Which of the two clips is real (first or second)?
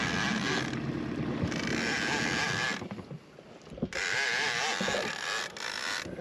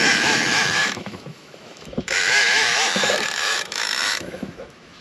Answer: first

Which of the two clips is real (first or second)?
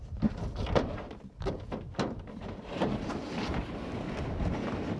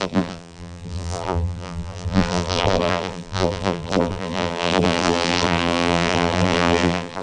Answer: first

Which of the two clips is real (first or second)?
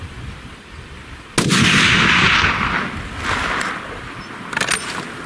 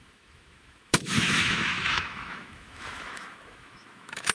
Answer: first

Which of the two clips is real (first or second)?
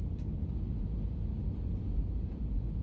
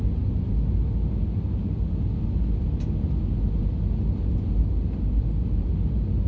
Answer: second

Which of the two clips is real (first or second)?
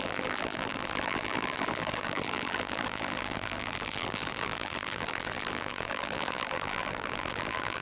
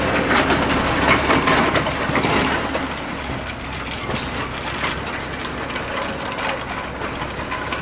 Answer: second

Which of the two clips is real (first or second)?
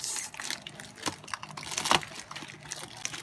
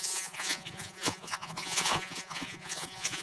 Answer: first